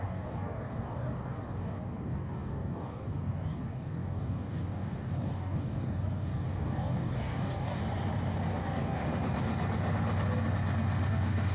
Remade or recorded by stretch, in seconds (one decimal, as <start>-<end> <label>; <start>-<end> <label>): 0.0-7.8 remade; 7.8-8.6 recorded; 8.6-9.1 remade; 9.1-11.1 recorded; 11.1-11.5 remade